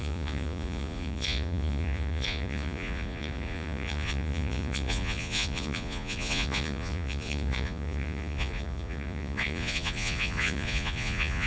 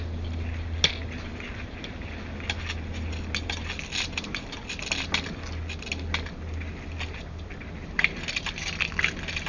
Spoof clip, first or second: first